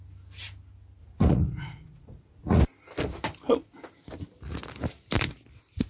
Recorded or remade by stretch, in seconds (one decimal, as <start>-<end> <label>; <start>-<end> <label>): 0.0-1.0 recorded; 1.0-2.6 remade; 2.6-5.9 recorded